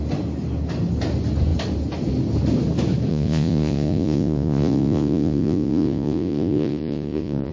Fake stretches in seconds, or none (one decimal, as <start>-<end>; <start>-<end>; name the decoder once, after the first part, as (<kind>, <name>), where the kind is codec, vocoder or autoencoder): 3.1-7.5 (vocoder, Vocos)